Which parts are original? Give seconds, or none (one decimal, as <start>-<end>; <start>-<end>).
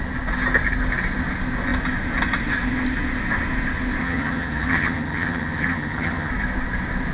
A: 0.0-4.0; 6.3-7.1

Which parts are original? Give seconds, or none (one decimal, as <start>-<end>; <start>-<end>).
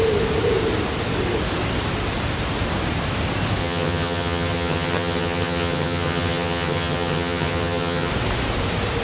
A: 0.0-3.6; 8.1-9.0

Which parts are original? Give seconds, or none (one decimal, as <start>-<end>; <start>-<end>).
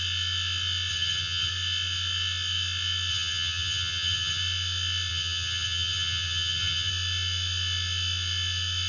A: 0.0-0.9; 1.5-3.1; 4.4-5.1; 6.9-8.9